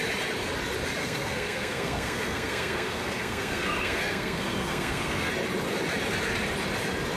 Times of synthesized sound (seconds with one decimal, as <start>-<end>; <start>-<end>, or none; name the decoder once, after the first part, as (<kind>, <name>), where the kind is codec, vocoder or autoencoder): 1.0-5.3 (codec, SNAC)